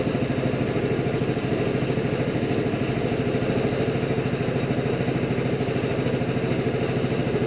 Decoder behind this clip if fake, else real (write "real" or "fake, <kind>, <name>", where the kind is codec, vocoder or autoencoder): real